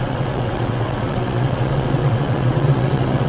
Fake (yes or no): yes